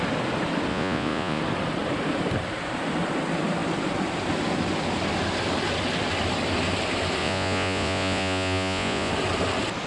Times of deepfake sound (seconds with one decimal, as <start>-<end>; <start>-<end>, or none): 0.7-1.4; 7.2-9.1